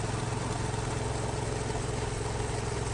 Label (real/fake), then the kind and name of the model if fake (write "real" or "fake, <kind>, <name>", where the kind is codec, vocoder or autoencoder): real